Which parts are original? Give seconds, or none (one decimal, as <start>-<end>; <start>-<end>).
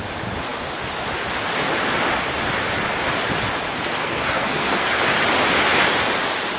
0.0-4.0; 5.0-6.6